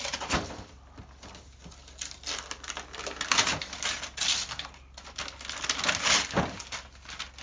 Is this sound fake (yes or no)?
no